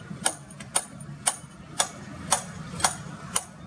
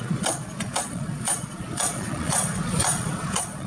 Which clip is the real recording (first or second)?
first